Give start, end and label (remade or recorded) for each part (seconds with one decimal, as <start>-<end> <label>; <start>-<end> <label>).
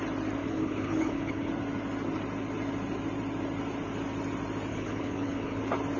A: 0.0-0.4 recorded; 0.4-1.5 remade; 1.5-4.7 recorded; 4.7-5.6 remade; 5.6-6.0 recorded